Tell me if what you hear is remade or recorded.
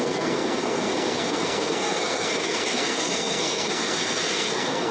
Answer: remade